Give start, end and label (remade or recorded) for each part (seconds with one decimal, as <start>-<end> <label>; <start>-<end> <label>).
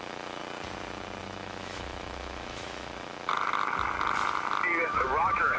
0.0-0.4 remade; 0.4-1.2 recorded; 1.2-3.3 remade; 3.3-4.8 recorded; 4.8-5.6 remade